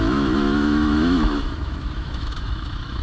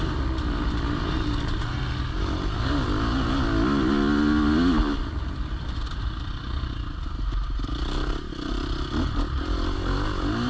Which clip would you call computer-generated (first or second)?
first